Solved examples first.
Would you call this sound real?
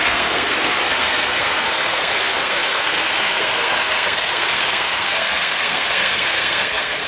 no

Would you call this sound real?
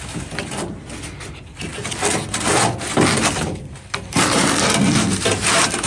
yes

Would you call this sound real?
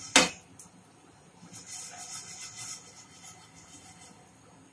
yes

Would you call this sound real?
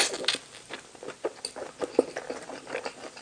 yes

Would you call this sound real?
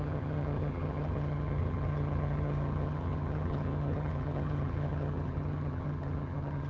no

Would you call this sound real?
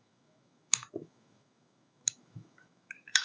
no